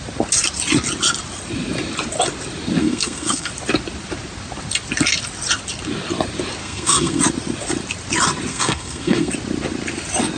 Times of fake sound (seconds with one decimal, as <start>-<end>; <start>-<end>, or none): 2.8-3.5; 6.6-7.2; 8.5-9.3